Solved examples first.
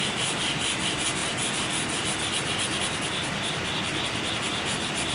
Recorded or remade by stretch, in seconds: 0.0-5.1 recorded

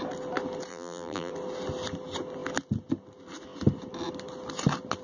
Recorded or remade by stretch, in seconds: 0.0-0.7 recorded; 0.7-1.3 remade; 1.3-5.0 recorded

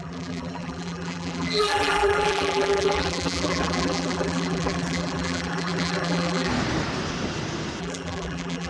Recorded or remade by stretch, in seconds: 0.0-6.5 remade; 6.5-7.8 recorded; 7.8-8.7 remade

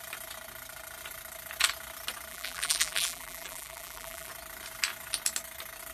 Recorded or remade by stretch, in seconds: 0.0-2.3 recorded; 2.3-4.3 remade; 4.3-5.9 recorded

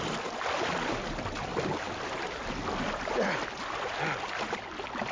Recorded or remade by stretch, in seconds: 0.0-5.1 recorded

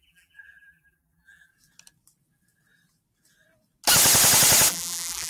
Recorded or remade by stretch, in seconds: 0.0-1.5 remade; 1.5-4.7 recorded; 4.7-5.3 remade

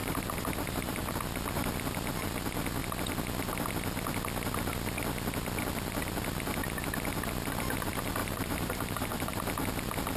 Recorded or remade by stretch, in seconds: 0.0-1.1 remade; 1.1-8.2 recorded; 8.2-9.3 remade; 9.3-10.2 recorded

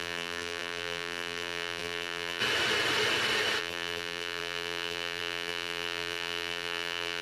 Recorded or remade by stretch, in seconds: 0.0-2.4 remade; 2.4-3.6 recorded; 3.6-7.2 remade